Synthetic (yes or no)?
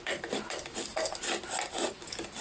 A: no